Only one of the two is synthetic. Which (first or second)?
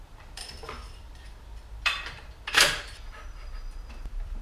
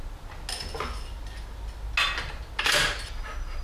first